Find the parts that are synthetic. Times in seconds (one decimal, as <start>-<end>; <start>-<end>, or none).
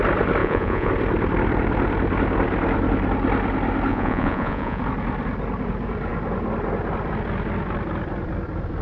0.4-0.9; 3.9-4.8